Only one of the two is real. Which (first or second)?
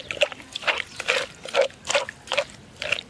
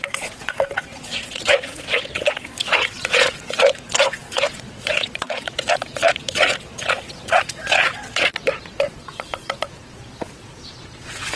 first